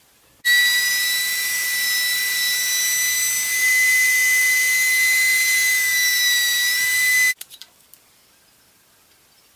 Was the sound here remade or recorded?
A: recorded